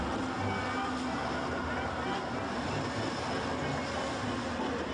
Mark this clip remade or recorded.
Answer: recorded